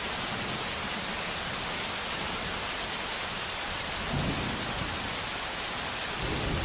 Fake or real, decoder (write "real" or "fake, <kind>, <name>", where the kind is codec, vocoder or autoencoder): real